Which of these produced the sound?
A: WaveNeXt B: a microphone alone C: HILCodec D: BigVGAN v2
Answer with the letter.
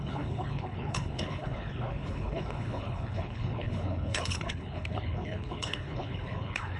C